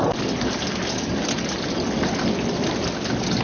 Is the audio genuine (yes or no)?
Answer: yes